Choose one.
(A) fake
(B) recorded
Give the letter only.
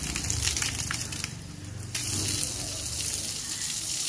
B